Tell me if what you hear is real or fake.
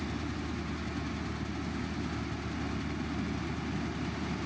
real